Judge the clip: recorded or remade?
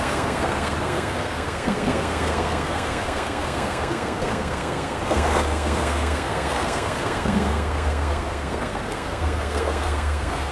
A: remade